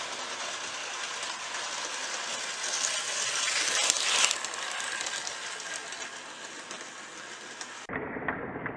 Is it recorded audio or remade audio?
recorded